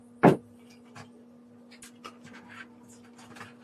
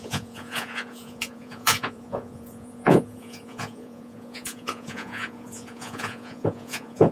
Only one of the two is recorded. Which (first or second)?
first